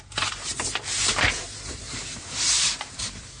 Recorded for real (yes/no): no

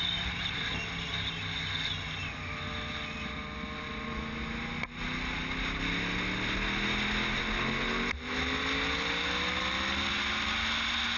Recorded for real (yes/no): yes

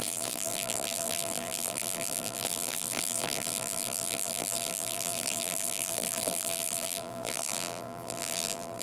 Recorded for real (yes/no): no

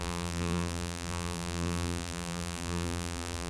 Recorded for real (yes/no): no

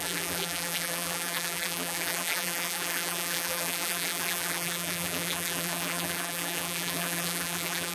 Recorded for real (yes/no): no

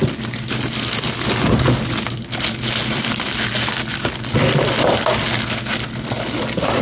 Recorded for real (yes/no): yes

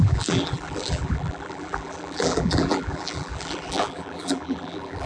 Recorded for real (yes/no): no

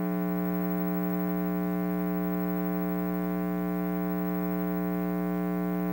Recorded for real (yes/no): yes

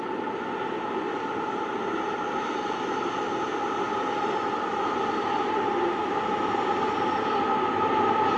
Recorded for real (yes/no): yes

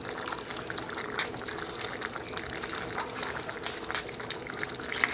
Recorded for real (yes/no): yes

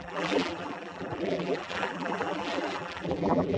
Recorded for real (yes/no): no